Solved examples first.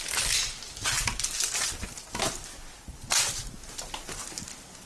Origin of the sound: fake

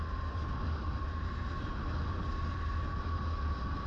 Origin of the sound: real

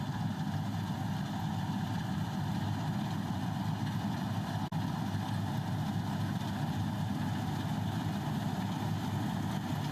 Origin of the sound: real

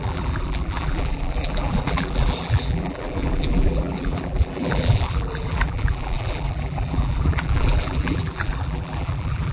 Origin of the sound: fake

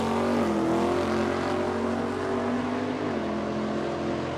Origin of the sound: real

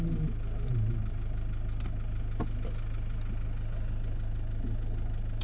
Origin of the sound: real